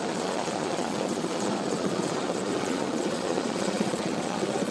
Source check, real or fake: fake